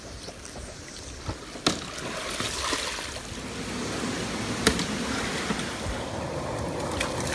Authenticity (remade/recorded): recorded